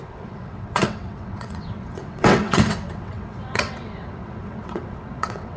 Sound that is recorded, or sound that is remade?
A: remade